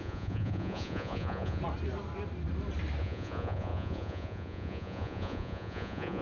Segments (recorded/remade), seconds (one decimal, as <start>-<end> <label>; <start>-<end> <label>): 0.0-1.6 remade; 1.6-3.0 recorded; 3.0-6.2 remade